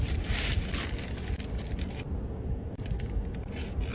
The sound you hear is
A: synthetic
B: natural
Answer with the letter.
B